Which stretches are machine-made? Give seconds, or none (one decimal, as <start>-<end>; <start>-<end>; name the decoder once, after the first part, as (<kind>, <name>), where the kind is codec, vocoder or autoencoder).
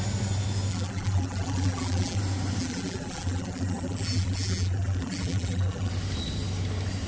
0.7-2.2 (vocoder, BigVGAN v2); 2.6-5.9